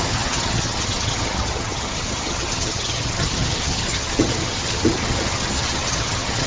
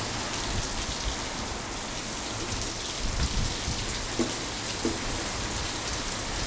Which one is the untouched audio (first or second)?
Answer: second